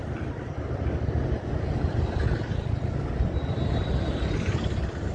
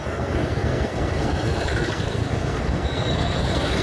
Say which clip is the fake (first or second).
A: second